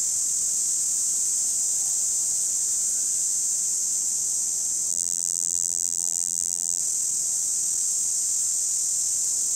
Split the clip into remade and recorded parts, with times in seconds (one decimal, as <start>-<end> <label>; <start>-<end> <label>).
0.0-4.9 recorded; 4.9-6.8 remade; 6.8-9.6 recorded